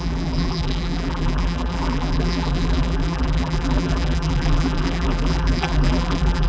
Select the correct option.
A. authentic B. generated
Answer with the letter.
B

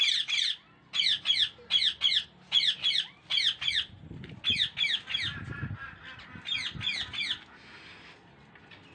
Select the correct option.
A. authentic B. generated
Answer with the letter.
A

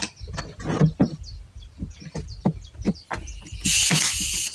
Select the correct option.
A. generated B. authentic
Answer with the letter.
B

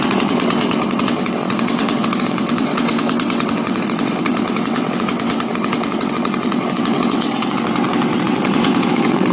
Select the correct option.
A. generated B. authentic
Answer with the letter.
A